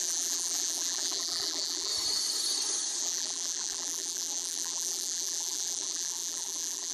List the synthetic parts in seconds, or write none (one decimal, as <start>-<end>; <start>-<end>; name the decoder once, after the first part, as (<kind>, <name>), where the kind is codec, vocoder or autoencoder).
0.0-1.9 (vocoder, BigVGAN v2); 3.0-6.9